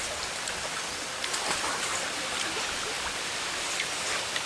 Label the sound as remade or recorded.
recorded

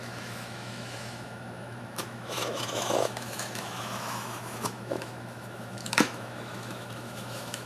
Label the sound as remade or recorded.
remade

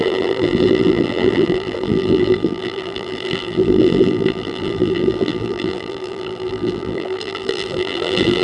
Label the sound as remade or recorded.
remade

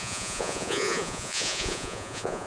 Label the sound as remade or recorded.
remade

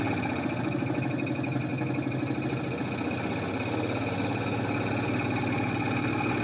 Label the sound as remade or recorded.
recorded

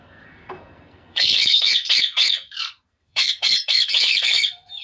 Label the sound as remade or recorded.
remade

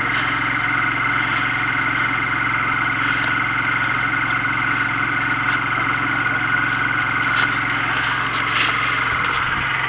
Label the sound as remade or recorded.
recorded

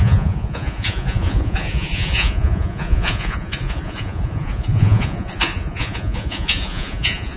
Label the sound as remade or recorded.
remade